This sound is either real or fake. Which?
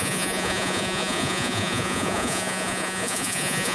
fake